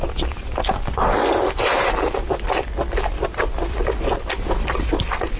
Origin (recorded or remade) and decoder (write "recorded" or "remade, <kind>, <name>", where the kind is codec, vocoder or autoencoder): recorded